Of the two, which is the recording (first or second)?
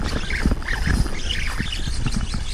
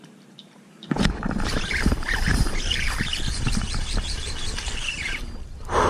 first